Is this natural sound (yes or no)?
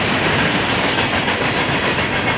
yes